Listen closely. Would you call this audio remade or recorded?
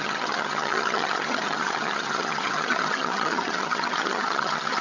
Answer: remade